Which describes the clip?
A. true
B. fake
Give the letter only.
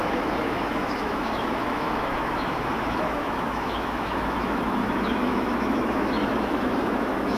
B